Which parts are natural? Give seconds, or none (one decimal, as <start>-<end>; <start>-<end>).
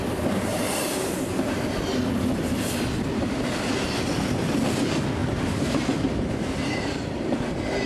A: 0.0-0.5; 1.4-5.2; 7.5-7.9